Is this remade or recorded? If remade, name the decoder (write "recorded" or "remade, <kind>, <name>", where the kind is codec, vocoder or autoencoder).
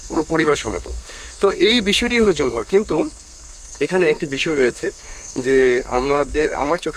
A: remade, codec, SNAC